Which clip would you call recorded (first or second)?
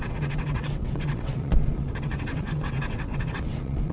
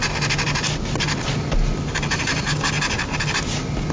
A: second